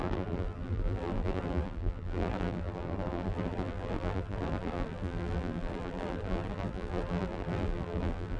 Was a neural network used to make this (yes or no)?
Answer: yes